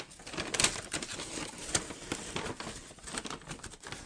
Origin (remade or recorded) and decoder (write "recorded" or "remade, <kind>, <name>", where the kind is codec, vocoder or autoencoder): recorded